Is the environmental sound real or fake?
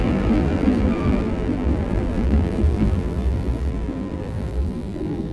fake